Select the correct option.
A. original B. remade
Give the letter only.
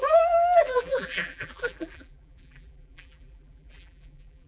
B